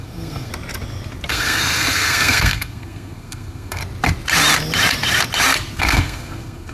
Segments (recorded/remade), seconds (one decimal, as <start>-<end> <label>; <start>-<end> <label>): 0.0-0.5 remade; 0.5-1.3 recorded; 1.3-3.8 remade; 3.8-5.8 recorded; 5.8-6.7 remade